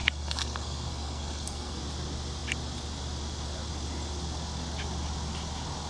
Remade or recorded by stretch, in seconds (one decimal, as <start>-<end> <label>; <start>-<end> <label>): 0.0-1.8 remade; 1.8-5.9 recorded